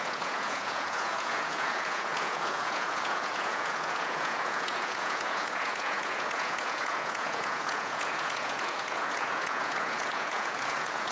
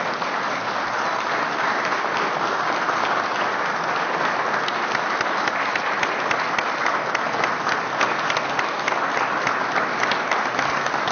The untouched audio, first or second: second